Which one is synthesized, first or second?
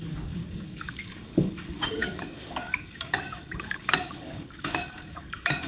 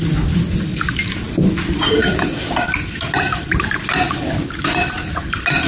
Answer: first